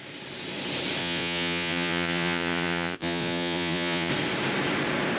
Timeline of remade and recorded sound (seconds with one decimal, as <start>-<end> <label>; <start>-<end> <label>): 0.0-1.0 recorded; 1.0-4.1 remade; 4.1-5.2 recorded